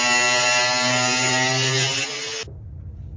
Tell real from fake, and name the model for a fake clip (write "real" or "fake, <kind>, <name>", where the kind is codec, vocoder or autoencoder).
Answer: real